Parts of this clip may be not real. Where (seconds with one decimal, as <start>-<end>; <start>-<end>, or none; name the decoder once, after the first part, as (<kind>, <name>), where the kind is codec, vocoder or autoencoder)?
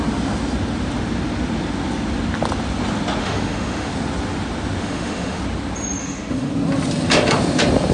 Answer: 3.2-3.9 (autoencoder, DAC-VAE); 4.8-5.4; 6.0-6.5